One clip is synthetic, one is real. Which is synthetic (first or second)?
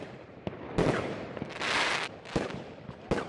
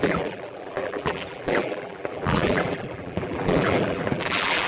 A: second